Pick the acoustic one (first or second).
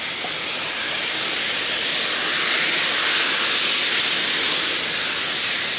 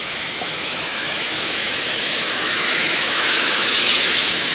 first